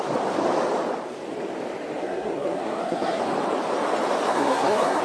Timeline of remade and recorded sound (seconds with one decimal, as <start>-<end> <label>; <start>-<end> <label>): 0.0-2.0 recorded; 2.0-3.2 remade; 3.2-4.3 recorded; 4.3-5.0 remade

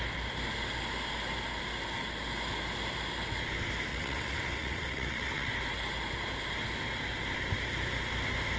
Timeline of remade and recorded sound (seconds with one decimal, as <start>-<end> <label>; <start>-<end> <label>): 0.0-3.9 recorded; 3.9-5.5 remade; 5.5-8.6 recorded